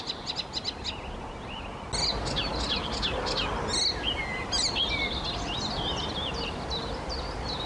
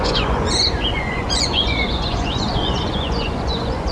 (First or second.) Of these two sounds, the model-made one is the second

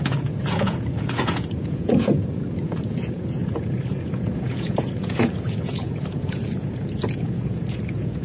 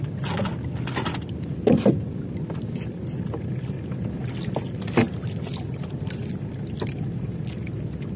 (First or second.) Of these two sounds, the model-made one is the first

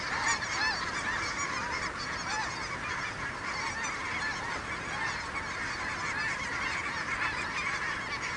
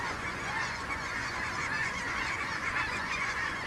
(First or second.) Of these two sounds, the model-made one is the second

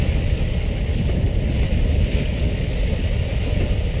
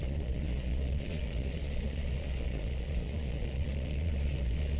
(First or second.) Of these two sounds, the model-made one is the second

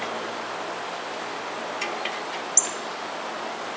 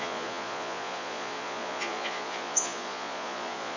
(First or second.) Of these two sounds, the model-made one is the second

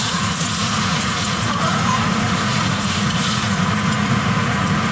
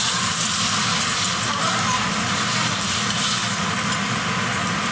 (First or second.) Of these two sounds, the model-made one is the first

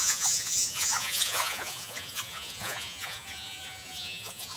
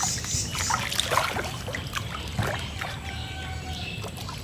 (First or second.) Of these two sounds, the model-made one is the first